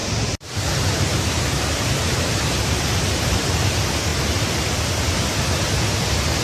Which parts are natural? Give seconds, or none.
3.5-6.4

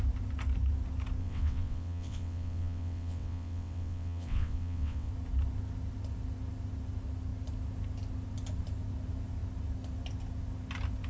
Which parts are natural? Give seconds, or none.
0.0-1.2; 5.1-11.1

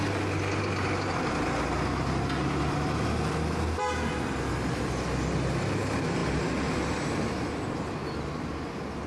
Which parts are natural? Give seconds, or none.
0.0-9.1

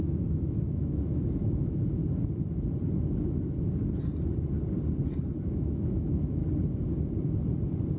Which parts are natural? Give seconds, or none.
2.0-5.4; 6.4-8.0